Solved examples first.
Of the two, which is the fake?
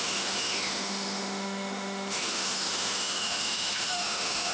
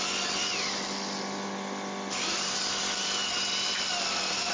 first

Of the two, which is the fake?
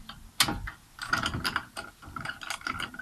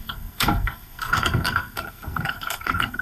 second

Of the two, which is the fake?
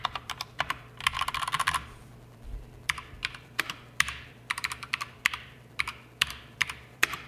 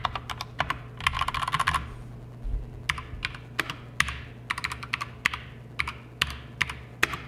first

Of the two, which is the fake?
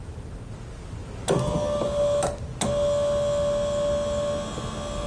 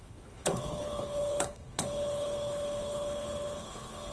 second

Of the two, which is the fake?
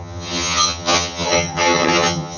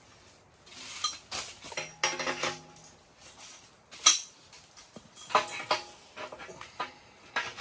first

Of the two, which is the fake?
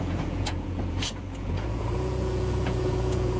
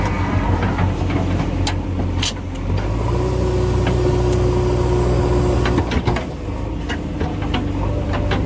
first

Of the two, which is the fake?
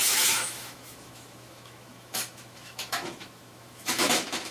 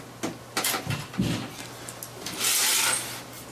first